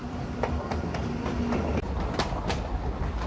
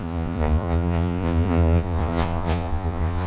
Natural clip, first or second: first